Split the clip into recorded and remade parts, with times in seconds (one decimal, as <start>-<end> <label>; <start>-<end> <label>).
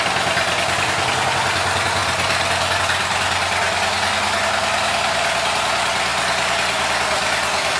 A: 0.0-7.8 recorded